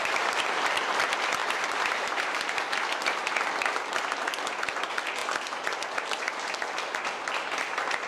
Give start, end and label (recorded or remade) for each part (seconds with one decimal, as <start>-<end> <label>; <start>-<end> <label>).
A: 0.0-1.0 remade; 1.0-1.4 recorded; 1.4-2.6 remade; 2.6-8.1 recorded